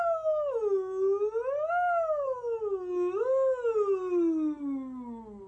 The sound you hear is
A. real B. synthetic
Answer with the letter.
A